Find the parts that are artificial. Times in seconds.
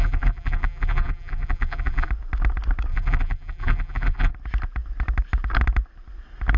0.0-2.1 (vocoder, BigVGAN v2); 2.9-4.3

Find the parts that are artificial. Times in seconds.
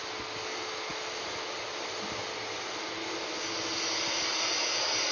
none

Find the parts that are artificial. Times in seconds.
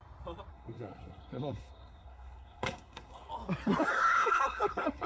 0.5-3.3 (codec, SNAC); 3.9-5.1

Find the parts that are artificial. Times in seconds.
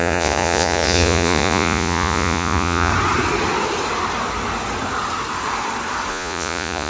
0.0-2.9 (vocoder, Vocos); 6.1-6.9